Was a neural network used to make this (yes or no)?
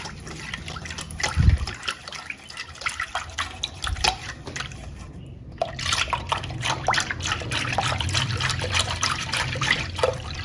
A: yes